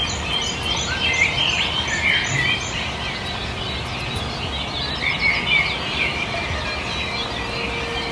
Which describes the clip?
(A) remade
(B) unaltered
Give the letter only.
B